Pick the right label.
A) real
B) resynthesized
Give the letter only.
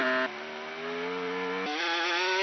A